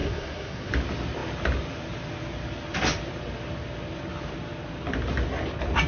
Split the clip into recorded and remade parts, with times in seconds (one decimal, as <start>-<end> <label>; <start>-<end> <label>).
0.0-0.7 remade; 0.7-5.9 recorded